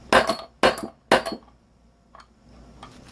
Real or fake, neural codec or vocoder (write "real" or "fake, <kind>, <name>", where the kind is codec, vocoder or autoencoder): real